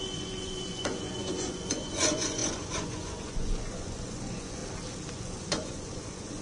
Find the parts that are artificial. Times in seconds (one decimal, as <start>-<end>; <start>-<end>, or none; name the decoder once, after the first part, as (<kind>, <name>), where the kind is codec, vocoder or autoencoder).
0.0-4.6 (vocoder, Vocos); 5.1-6.4